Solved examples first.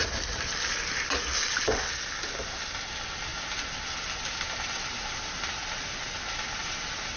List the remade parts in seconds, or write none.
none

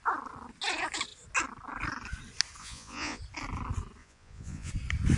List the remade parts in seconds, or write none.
2.6-3.2; 4.0-4.7

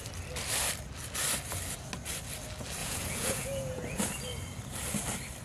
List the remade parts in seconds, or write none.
2.8-4.0

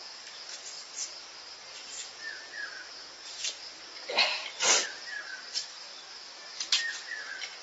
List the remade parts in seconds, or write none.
2.0-3.3

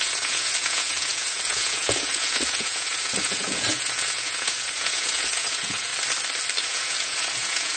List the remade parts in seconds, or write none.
0.0-5.9; 6.7-7.8

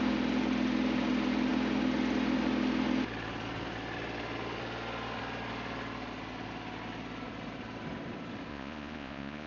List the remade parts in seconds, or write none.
8.5-9.5

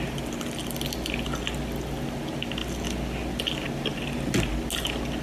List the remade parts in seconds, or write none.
none

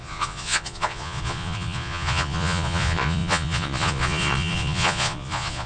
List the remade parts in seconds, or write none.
0.0-5.7